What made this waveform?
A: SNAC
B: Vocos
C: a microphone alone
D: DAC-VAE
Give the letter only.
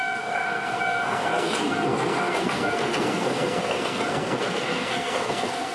A